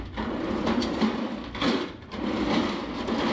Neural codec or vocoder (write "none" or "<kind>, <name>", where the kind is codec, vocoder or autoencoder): vocoder, BigVGAN v2